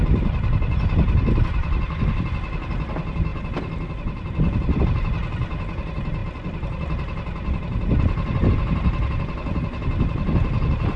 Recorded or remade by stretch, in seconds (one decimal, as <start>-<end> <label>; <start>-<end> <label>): 0.0-11.0 recorded